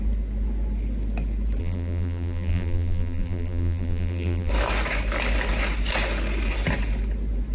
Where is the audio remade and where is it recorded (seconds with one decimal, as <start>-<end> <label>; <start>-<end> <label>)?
0.0-1.6 recorded; 1.6-4.5 remade; 4.5-7.5 recorded